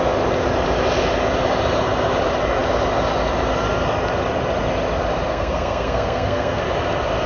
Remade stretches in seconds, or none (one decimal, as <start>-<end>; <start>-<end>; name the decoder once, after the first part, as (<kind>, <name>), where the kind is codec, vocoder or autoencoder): 5.3-6.6 (codec, SNAC)